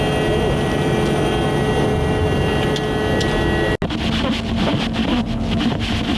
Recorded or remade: recorded